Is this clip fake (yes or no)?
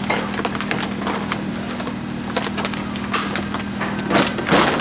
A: no